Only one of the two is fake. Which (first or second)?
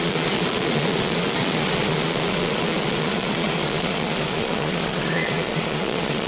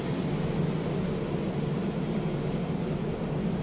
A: first